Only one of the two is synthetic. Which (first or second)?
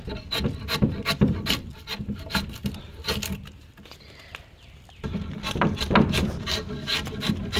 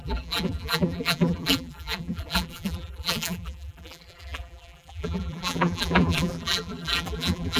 second